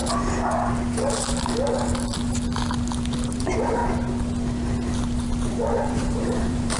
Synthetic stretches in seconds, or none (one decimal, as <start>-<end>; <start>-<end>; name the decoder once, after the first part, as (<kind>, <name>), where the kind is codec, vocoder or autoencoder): 3.4-3.8 (vocoder, BigVGAN v2); 5.5-6.8